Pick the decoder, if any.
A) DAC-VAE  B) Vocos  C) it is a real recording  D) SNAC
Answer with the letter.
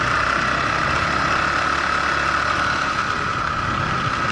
C